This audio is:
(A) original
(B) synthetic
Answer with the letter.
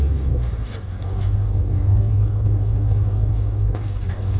B